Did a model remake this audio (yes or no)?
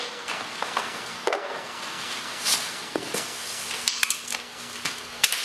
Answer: yes